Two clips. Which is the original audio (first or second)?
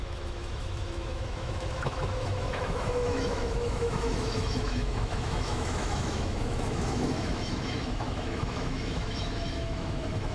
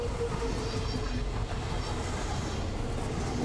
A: second